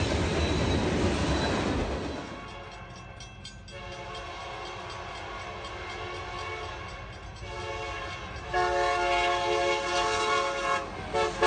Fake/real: real